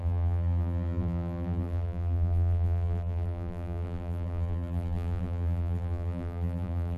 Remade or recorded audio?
remade